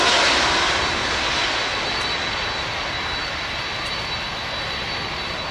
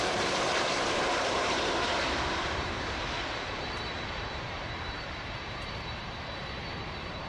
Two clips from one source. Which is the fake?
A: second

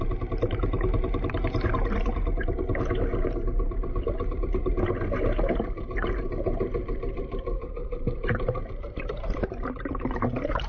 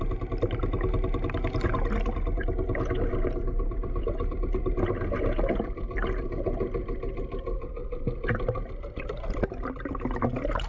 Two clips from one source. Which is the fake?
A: first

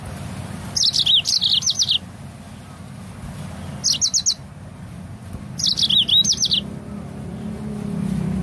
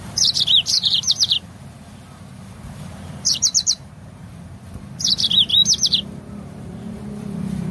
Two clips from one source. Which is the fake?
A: second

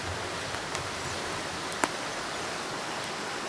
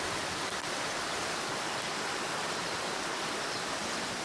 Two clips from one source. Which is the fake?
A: second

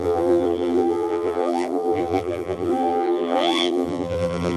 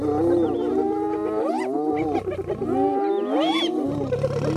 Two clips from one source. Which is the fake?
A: first